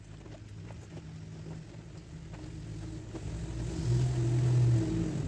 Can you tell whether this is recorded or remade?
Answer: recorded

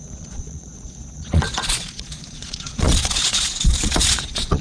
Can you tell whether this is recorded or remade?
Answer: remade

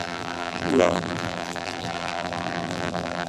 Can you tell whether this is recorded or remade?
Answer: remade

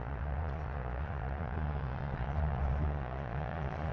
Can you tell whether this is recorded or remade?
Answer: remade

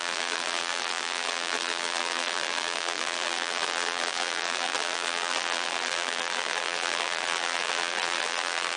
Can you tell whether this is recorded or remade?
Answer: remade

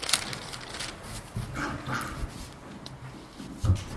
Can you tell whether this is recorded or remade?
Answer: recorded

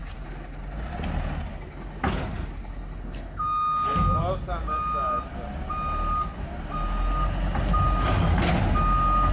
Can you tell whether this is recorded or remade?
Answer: recorded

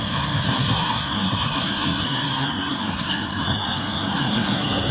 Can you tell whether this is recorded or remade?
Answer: remade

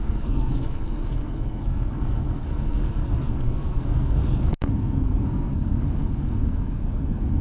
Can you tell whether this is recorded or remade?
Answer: remade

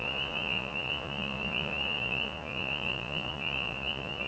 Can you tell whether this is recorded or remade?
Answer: remade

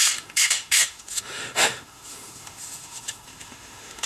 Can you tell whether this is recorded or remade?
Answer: remade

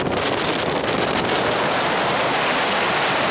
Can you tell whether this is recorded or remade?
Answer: recorded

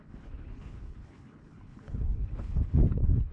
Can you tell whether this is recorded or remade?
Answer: remade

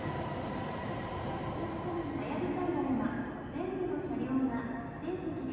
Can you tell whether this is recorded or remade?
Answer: recorded